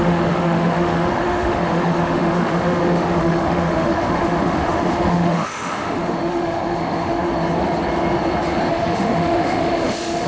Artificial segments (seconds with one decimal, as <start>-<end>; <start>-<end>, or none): 0.0-7.2; 8.7-10.3